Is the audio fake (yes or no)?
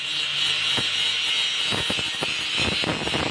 no